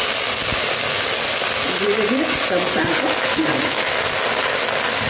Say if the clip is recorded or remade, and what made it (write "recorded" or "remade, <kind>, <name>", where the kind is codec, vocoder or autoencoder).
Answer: recorded